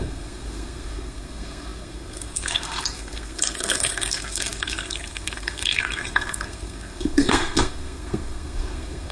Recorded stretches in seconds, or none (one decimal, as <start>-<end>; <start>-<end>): none